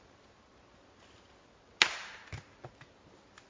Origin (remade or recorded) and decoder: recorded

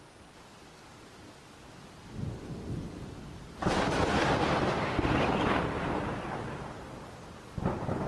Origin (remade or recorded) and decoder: recorded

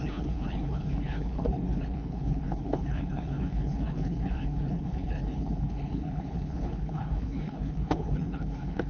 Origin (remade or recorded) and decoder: remade, codec, HILCodec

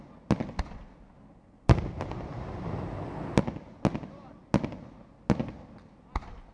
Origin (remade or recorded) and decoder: recorded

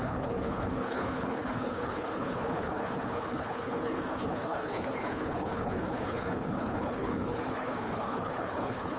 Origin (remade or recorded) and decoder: remade, codec, HILCodec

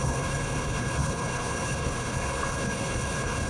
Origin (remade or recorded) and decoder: remade, codec, HILCodec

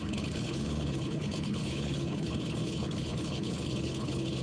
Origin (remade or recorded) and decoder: remade, codec, HILCodec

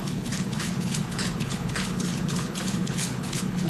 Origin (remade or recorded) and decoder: remade, codec, HILCodec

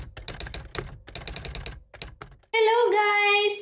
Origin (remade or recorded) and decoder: recorded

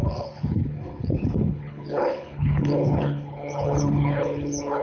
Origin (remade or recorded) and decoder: remade, codec, HILCodec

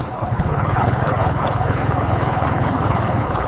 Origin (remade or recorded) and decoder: remade, codec, HILCodec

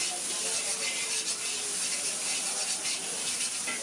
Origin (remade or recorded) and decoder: recorded